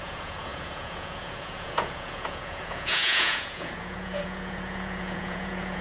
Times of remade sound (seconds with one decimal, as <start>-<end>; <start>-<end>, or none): 0.0-5.8